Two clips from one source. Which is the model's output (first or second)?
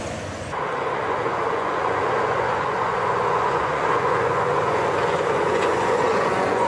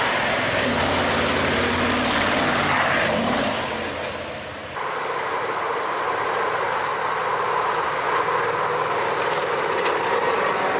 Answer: first